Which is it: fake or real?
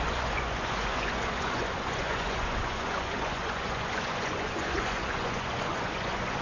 fake